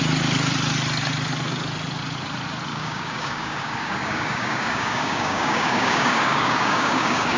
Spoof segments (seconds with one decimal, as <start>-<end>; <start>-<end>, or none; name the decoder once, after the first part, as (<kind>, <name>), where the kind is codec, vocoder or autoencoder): 2.7-7.4 (codec, DAC)